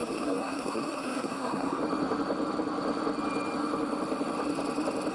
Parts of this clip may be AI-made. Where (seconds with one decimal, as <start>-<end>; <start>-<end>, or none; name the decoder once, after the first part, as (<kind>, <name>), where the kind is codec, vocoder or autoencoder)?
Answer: 0.0-1.8 (codec, SNAC)